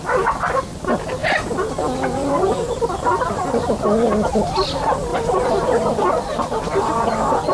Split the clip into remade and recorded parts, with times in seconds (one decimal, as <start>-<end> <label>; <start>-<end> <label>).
0.0-5.1 recorded; 5.1-6.1 remade; 6.1-7.5 recorded